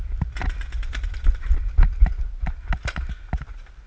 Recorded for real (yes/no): yes